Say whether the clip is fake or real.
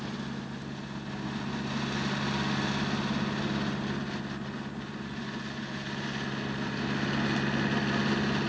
real